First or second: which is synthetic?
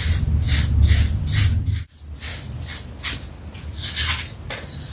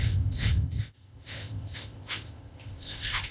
second